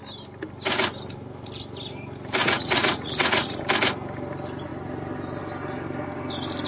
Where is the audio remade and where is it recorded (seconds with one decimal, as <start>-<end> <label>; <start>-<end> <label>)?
0.0-2.4 recorded; 2.4-3.6 remade; 3.6-6.7 recorded